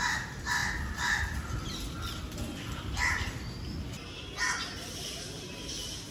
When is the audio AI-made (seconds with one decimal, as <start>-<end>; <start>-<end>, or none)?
none